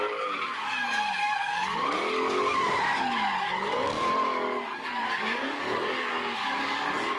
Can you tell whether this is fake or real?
fake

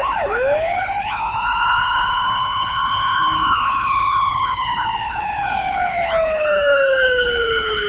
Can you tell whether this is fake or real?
fake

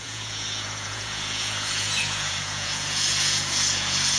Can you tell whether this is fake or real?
fake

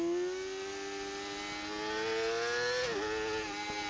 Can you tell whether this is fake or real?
real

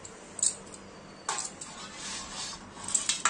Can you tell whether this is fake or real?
real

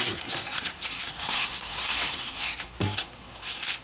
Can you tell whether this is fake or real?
fake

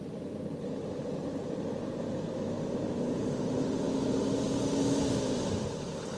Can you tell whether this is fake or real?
fake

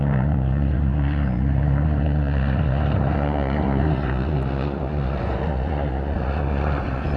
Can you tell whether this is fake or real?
fake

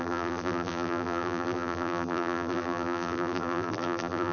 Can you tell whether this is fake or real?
fake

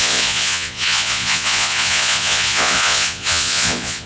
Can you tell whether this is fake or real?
fake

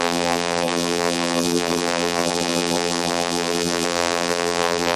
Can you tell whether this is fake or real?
fake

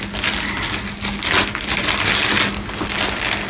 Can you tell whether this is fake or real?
real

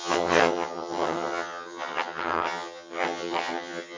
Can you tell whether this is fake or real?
fake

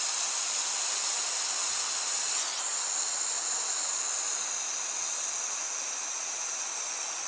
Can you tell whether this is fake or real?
real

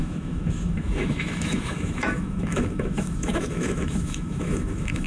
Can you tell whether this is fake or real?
fake